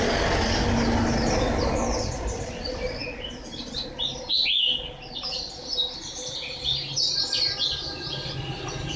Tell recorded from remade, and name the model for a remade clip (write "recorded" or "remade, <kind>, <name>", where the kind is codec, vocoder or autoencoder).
recorded